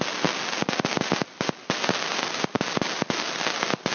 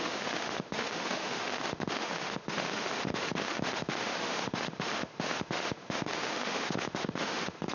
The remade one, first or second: second